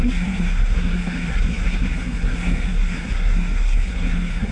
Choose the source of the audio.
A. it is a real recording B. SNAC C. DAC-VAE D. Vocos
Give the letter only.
B